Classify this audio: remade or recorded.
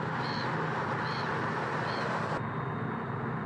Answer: recorded